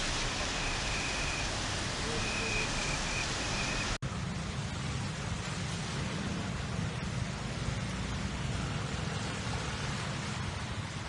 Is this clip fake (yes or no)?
no